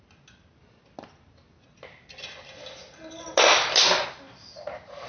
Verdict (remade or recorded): recorded